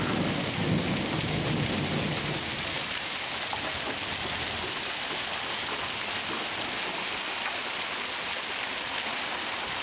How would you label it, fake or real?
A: real